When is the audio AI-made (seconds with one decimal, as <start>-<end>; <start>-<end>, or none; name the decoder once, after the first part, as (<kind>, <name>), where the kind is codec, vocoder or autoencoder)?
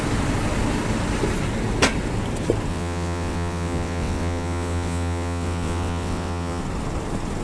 2.7-6.6 (vocoder, WaveNeXt)